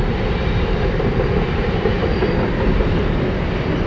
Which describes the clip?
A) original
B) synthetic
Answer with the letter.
B